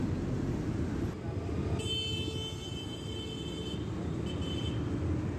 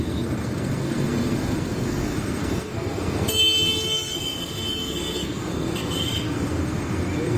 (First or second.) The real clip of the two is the first